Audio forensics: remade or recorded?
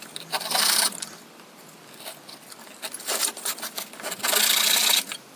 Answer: remade